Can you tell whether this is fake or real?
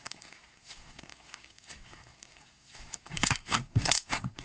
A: fake